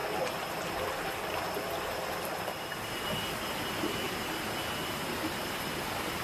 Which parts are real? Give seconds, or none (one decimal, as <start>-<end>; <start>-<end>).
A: 0.0-6.2